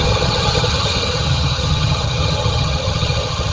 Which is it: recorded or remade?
remade